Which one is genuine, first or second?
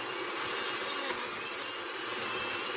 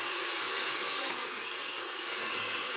first